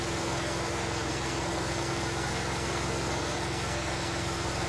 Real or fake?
fake